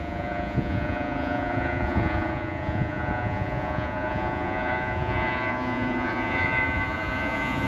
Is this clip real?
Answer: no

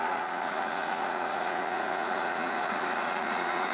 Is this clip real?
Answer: no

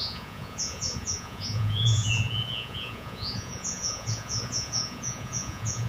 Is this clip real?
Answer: no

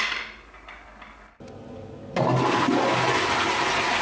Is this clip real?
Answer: yes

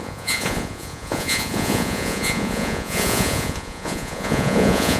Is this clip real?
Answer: no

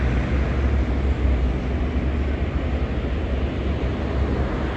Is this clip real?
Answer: yes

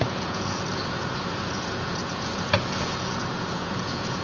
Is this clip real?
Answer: no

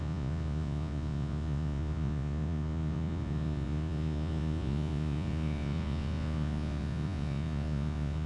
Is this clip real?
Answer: no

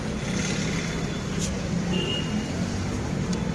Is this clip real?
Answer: yes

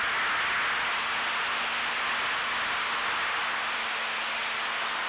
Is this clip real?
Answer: yes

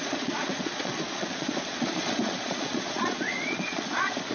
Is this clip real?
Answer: no